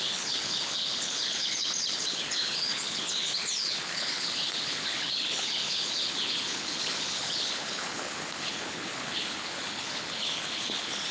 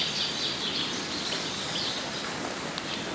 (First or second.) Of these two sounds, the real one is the second